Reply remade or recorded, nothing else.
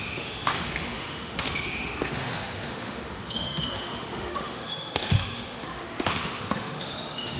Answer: remade